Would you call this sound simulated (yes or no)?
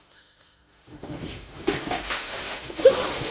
yes